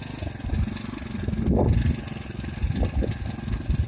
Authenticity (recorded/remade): recorded